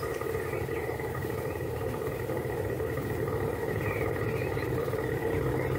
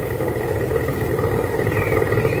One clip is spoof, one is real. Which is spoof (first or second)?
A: second